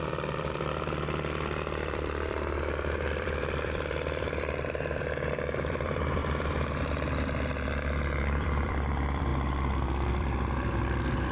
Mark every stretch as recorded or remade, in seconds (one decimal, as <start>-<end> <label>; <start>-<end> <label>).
0.0-6.2 remade; 6.2-6.8 recorded; 6.8-9.3 remade; 9.3-10.1 recorded; 10.1-11.3 remade